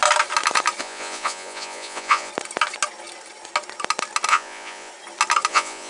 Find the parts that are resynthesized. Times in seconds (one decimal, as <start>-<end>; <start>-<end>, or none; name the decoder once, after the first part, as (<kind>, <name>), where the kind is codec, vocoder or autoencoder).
0.8-2.3 (vocoder, Vocos); 4.3-4.9; 5.5-5.9